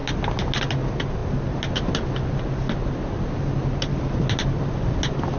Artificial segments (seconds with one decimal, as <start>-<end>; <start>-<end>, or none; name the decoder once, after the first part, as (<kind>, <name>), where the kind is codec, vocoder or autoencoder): none